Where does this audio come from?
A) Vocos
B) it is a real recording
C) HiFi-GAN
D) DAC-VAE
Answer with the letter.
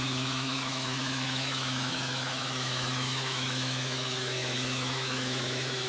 D